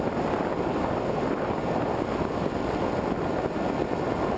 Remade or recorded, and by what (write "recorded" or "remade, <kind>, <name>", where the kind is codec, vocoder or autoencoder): recorded